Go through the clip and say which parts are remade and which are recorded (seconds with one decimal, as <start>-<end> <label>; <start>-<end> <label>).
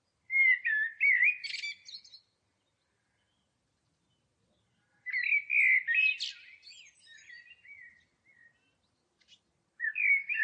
0.0-10.4 recorded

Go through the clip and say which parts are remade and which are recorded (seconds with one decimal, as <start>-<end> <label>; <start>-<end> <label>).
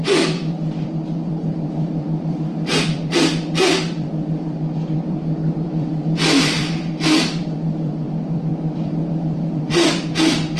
0.0-10.6 remade